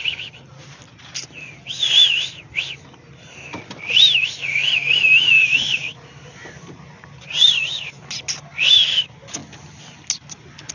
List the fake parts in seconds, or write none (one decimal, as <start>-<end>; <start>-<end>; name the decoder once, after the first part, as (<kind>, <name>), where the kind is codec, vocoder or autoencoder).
none